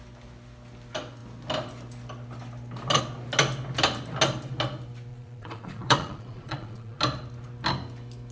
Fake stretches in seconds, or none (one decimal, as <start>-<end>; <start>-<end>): 5.1-7.0